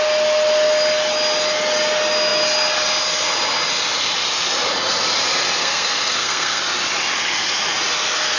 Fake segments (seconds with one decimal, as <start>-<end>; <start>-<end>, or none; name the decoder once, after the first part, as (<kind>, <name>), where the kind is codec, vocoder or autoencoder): 5.6-6.6 (codec, SNAC)